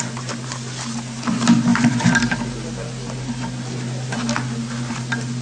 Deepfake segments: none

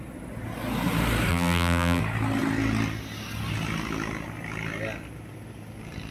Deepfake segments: 1.3-2.0 (vocoder, BigVGAN v2)

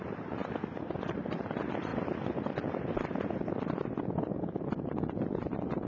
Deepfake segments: 0.0-0.4 (vocoder, BigVGAN v2); 1.1-1.9; 5.4-5.9

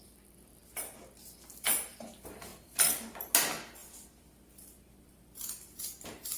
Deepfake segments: 0.0-0.6 (vocoder, BigVGAN v2); 2.1-3.8; 5.0-6.4

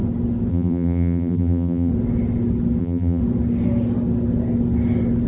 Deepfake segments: 0.5-1.9 (vocoder, BigVGAN v2); 2.8-3.2

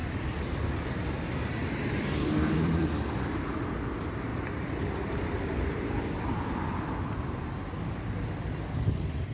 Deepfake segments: 0.0-3.5 (vocoder, BigVGAN v2); 4.3-7.2

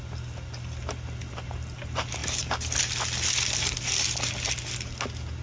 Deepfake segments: none

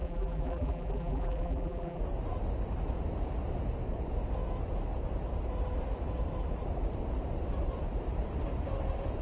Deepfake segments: 0.0-2.0 (vocoder, BigVGAN v2)